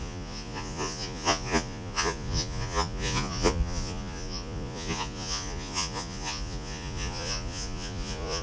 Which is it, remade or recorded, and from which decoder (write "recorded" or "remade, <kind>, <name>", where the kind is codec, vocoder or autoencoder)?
remade, vocoder, Vocos